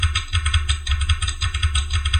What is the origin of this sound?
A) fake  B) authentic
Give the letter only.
B